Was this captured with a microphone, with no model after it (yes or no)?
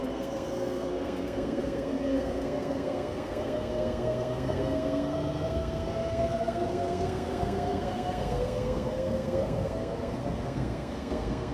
no